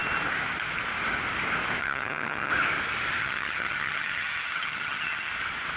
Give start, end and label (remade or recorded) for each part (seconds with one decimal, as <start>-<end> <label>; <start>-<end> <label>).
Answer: 0.0-1.8 recorded; 1.8-2.5 remade; 2.5-3.2 recorded; 3.2-5.3 remade; 5.3-5.8 recorded